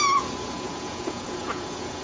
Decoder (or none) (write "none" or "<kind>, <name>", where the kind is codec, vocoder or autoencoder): vocoder, Vocos